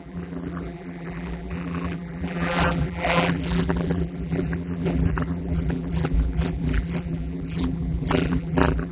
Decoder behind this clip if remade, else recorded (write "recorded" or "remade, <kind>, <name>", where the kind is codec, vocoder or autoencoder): remade, vocoder, BigVGAN v2